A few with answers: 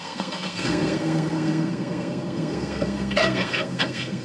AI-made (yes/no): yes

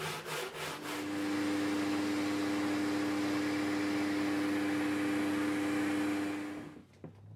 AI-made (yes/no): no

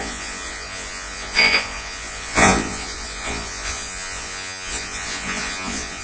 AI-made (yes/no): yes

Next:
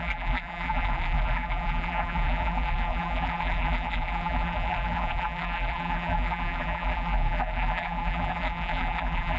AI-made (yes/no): yes